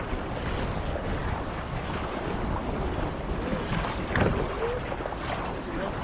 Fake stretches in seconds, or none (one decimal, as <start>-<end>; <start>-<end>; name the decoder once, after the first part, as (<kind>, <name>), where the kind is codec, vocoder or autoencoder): none